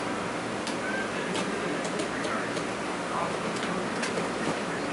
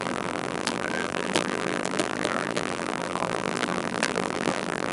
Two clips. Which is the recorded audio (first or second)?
first